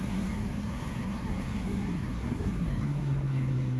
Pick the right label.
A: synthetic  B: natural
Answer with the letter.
A